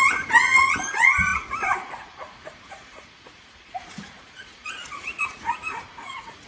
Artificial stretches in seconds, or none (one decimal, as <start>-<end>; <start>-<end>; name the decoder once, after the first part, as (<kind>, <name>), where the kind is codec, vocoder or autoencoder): 0.0-6.5 (vocoder, Vocos)